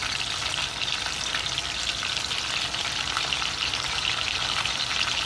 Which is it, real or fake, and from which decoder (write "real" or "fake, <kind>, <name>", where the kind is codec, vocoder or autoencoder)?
real